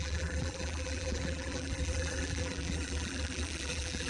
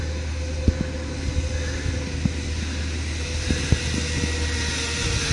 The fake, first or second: first